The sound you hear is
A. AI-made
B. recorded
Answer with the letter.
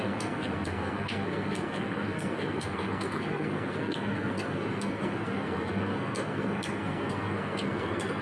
A